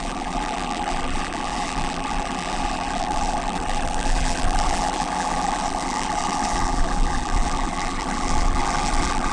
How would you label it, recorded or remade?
remade